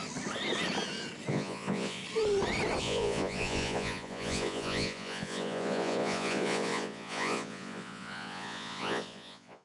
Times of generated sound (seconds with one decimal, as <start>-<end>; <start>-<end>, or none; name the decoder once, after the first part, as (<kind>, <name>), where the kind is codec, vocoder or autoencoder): 1.3-2.0 (vocoder, Vocos); 2.8-9.6

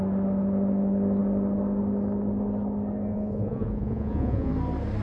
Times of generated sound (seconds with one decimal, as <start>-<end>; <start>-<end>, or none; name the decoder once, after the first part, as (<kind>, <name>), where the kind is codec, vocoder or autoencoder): 3.1-4.5 (vocoder, Vocos)

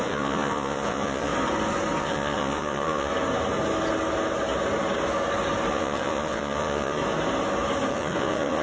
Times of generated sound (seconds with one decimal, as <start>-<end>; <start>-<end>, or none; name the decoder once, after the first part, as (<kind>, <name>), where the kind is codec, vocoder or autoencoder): 0.0-1.3 (vocoder, Vocos); 2.0-3.1; 5.7-7.0; 7.9-8.6

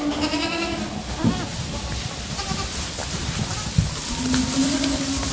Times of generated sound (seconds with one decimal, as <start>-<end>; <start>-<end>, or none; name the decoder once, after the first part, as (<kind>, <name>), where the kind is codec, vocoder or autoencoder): none

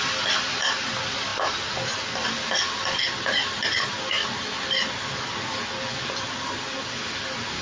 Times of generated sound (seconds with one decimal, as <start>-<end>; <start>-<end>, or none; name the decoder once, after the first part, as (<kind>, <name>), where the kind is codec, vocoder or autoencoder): none

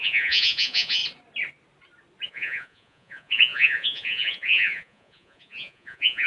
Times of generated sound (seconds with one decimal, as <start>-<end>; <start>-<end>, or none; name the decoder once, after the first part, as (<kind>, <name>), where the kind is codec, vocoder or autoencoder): 0.0-1.0 (vocoder, Vocos); 2.3-6.3